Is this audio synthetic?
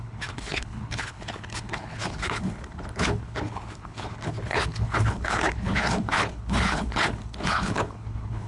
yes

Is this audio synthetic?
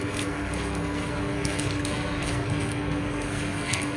yes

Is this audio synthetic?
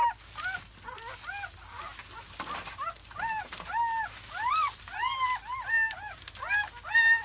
no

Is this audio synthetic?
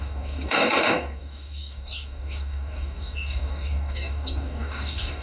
yes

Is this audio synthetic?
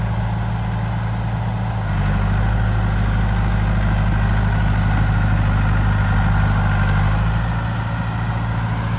no